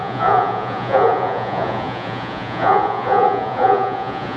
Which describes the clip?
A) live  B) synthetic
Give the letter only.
B